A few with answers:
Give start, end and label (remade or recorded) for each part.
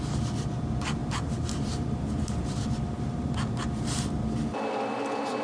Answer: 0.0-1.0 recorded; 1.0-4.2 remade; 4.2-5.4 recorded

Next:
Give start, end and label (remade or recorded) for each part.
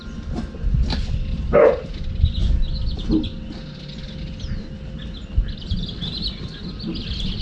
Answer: 0.0-7.4 recorded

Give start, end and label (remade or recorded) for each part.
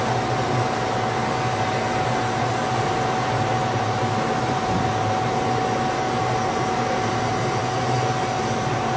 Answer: 0.0-9.0 recorded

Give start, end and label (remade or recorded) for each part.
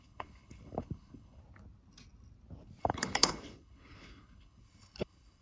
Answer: 0.0-1.4 remade; 1.4-2.8 recorded; 2.8-5.4 remade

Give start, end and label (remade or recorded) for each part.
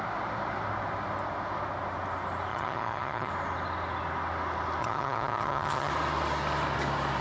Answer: 0.0-2.5 recorded; 2.5-3.3 remade; 3.3-4.8 recorded; 4.8-5.9 remade; 5.9-7.2 recorded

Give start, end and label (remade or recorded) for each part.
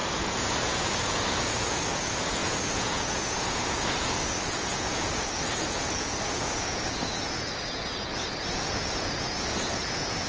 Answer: 0.0-10.3 remade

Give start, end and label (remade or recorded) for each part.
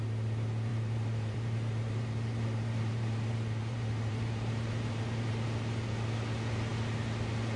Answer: 0.0-0.7 recorded; 0.7-5.3 remade; 5.3-7.6 recorded